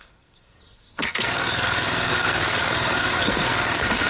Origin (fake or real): fake